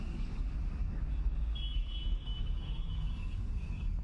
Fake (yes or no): yes